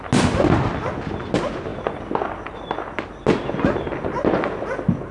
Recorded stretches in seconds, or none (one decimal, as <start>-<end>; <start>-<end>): 0.0-5.1